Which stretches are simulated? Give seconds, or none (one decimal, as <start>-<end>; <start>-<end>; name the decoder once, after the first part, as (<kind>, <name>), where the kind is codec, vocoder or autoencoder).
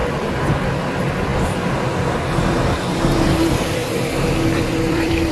1.3-2.2 (vocoder, BigVGAN v2); 3.8-5.3